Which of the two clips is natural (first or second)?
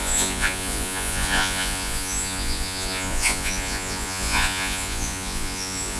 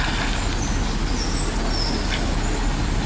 second